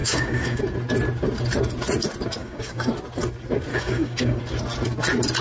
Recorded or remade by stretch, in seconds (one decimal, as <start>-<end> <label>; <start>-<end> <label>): 0.0-0.6 remade; 0.6-2.4 recorded; 2.4-2.9 remade; 2.9-3.7 recorded; 3.7-4.4 remade; 4.4-5.4 recorded